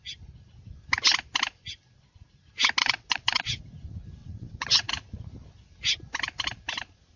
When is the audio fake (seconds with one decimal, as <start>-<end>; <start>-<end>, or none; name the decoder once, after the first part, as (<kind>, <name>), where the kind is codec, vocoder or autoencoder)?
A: 2.8-3.6 (vocoder, WaveNeXt); 4.2-4.9